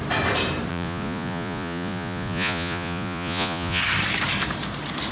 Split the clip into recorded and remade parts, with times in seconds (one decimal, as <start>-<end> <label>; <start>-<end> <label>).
0.0-0.7 recorded; 0.7-3.8 remade; 3.8-5.1 recorded